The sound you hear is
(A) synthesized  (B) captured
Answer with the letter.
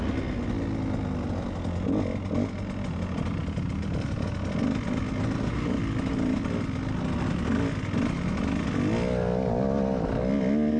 B